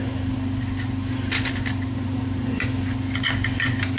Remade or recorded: recorded